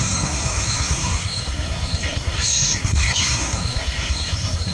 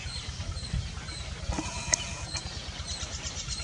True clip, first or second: second